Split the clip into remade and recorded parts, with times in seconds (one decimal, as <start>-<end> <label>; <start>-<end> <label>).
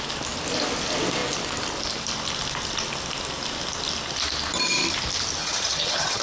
0.0-5.4 recorded; 5.4-6.2 remade